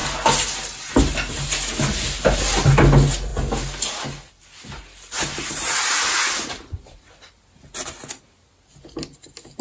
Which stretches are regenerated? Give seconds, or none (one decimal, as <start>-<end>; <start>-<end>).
none

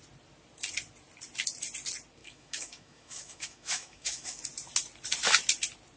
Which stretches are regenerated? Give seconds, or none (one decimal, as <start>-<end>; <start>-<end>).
2.2-4.4

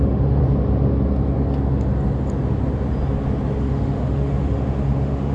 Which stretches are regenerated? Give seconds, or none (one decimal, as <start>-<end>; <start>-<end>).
0.0-0.4; 3.6-5.3

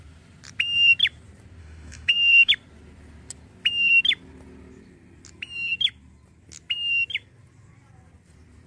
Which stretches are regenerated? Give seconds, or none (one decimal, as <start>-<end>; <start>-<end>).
1.6-2.5

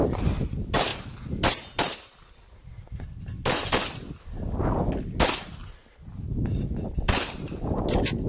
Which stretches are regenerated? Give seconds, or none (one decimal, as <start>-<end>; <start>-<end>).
none